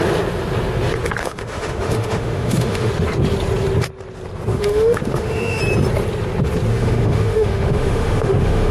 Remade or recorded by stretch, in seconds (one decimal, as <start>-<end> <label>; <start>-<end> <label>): 0.0-1.2 recorded; 1.2-2.9 remade; 2.9-4.5 recorded; 4.5-5.6 remade; 5.6-6.7 recorded; 6.7-8.7 remade